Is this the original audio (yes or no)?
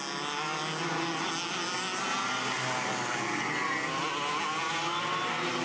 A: yes